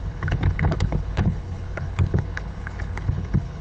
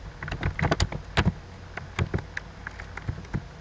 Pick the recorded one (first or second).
second